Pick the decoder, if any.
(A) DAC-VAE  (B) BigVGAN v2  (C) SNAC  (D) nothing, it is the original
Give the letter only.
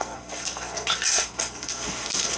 C